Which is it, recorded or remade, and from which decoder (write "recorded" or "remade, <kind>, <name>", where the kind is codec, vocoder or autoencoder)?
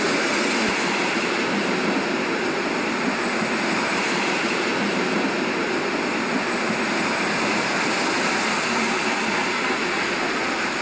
recorded